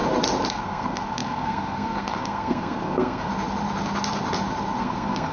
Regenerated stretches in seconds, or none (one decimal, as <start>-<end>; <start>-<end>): 0.5-3.3; 4.8-5.3